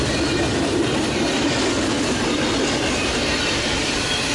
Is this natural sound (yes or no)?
no